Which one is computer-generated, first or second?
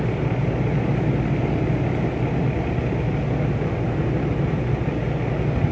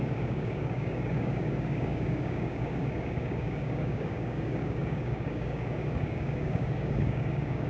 second